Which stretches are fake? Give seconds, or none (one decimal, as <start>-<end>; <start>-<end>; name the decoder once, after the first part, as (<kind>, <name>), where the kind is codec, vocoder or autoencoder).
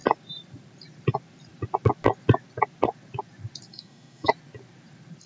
3.7-4.3 (autoencoder, DAC-VAE)